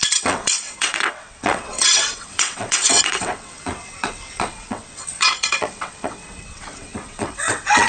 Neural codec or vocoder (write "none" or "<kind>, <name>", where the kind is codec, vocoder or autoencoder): vocoder, WaveNeXt